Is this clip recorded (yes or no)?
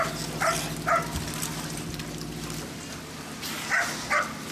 yes